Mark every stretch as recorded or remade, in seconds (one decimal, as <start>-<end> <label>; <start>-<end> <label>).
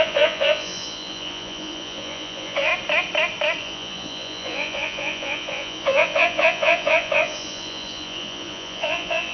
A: 0.0-2.7 remade; 2.7-3.6 recorded; 3.6-9.3 remade